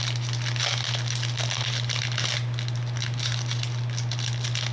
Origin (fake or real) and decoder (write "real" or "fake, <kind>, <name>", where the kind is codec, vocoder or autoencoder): real